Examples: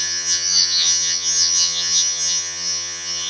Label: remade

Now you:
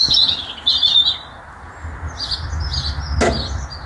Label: recorded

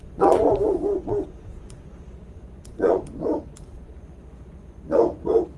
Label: remade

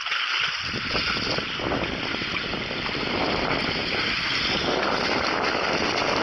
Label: recorded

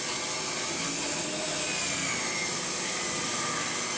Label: recorded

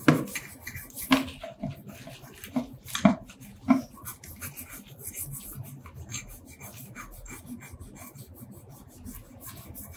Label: recorded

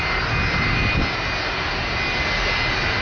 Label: recorded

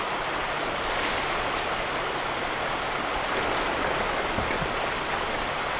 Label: recorded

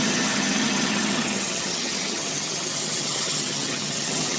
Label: remade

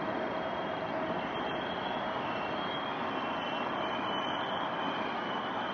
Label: recorded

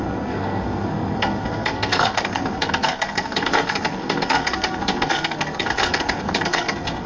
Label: remade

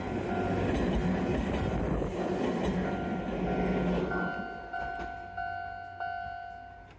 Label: recorded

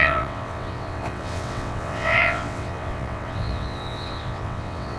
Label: remade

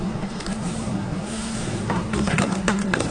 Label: remade